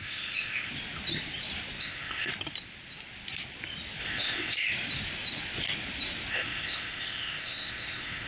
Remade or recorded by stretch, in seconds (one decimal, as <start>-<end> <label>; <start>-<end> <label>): 0.0-0.7 remade; 0.7-1.8 recorded; 1.8-2.3 remade; 2.3-4.0 recorded; 4.0-4.7 remade; 4.7-6.3 recorded; 6.3-8.3 remade